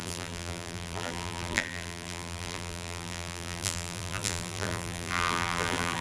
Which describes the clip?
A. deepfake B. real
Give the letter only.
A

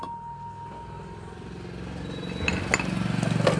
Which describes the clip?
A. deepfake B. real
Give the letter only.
B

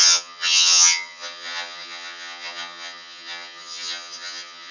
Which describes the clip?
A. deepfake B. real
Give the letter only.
A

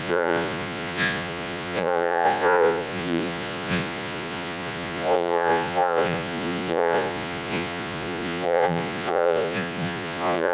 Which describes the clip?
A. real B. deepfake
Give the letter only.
B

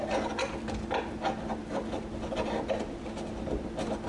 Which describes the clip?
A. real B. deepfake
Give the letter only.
A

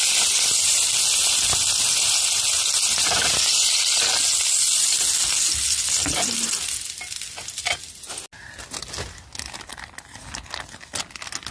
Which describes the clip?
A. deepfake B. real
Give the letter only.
B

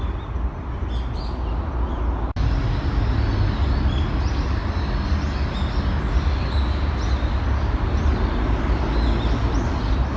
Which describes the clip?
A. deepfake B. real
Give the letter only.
B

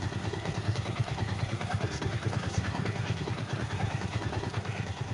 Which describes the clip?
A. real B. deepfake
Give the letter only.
B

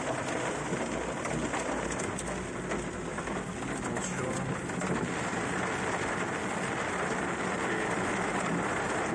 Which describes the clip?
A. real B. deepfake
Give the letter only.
A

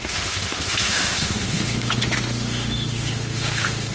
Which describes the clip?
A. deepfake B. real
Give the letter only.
A